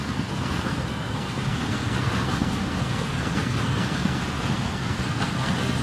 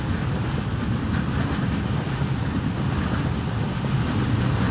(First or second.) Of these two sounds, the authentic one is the second